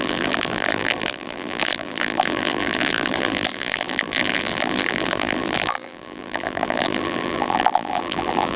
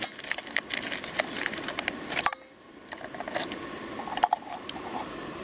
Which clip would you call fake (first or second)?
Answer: first